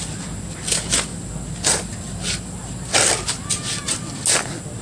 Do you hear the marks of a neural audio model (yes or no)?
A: no